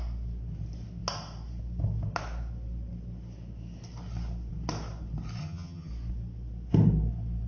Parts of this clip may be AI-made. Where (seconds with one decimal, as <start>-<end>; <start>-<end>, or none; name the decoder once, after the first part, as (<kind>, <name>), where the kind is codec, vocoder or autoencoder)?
5.4-5.9 (vocoder, HiFi-GAN)